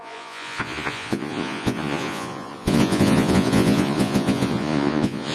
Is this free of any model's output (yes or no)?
no